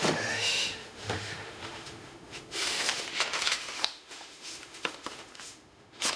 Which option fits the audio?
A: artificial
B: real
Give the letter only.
A